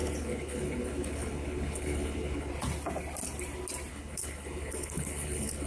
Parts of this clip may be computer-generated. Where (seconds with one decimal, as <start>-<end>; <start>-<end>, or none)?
0.0-2.5; 3.9-5.7